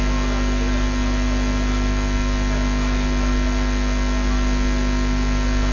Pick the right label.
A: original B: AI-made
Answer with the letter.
A